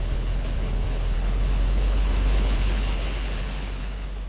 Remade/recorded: remade